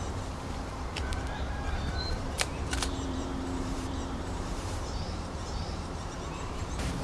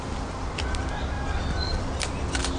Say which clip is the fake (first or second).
first